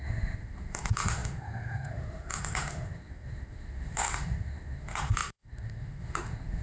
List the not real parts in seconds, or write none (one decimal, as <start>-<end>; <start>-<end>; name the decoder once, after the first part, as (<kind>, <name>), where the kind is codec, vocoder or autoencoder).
0.0-6.6 (autoencoder, DAC-VAE)